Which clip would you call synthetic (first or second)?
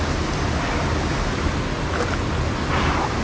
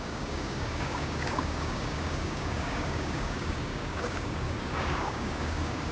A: second